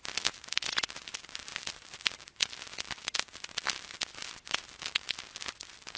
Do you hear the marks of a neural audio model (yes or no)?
no